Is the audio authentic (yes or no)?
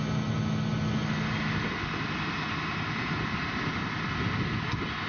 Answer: yes